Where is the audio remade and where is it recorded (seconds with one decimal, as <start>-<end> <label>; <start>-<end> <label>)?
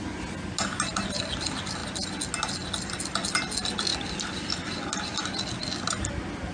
0.0-6.5 recorded